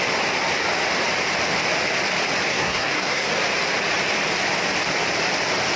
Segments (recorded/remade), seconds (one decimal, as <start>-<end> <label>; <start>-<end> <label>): 0.0-2.5 recorded; 2.5-3.3 remade; 3.3-5.8 recorded

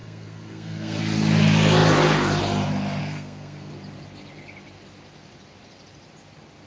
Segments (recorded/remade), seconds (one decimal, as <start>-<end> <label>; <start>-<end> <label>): 0.0-1.0 remade; 1.0-3.0 recorded; 3.0-3.7 remade; 3.7-6.7 recorded

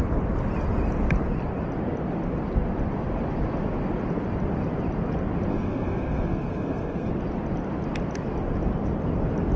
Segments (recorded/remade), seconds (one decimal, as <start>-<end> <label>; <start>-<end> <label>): 0.0-5.5 recorded; 5.5-7.1 remade; 7.1-9.6 recorded

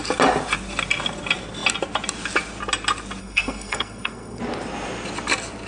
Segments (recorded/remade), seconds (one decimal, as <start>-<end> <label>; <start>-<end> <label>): 0.0-3.2 recorded; 3.2-4.4 remade; 4.4-5.7 recorded

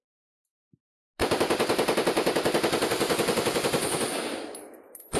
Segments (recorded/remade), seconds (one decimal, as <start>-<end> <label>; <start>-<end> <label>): 0.0-5.2 recorded